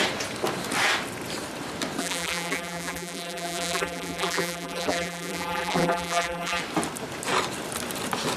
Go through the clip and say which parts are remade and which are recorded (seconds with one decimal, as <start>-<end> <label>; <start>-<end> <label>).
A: 0.0-2.0 recorded; 2.0-6.6 remade; 6.6-8.4 recorded